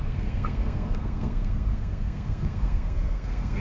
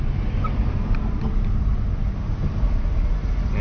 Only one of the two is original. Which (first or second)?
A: second